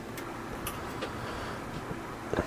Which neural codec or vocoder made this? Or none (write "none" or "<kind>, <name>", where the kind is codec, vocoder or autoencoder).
none